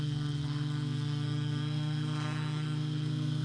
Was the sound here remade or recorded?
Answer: remade